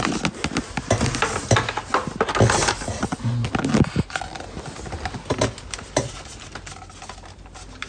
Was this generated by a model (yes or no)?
no